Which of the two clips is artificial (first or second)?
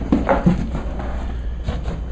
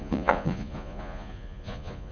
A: second